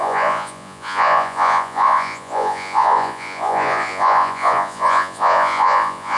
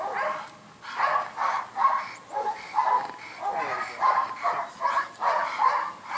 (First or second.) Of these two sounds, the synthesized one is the first